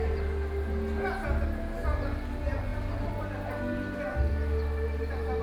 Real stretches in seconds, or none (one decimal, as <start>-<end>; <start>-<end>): 0.0-5.4

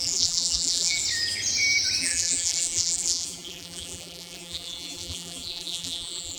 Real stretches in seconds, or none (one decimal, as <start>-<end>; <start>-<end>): 1.0-2.0